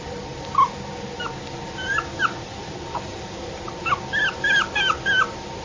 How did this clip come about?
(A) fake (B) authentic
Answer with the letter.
B